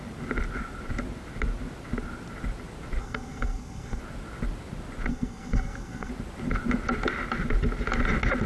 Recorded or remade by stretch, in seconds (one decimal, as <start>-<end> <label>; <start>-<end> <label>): 0.0-3.0 recorded; 3.0-4.0 remade; 4.0-5.1 recorded; 5.1-6.1 remade; 6.1-8.5 recorded